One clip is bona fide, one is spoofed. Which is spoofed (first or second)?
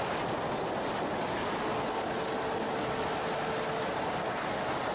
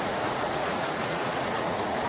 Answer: second